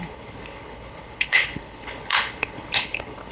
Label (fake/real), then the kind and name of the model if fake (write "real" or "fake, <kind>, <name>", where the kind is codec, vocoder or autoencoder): fake, codec, HILCodec